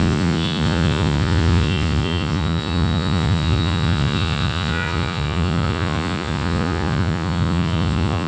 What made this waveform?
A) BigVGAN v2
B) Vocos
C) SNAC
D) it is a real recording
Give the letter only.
B